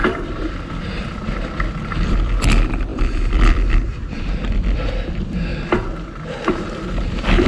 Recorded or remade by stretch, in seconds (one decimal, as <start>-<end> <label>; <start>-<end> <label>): 0.0-0.8 recorded; 0.8-5.5 remade; 5.5-7.1 recorded; 7.1-7.5 remade